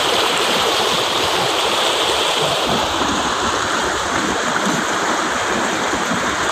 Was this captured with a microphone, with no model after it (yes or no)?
no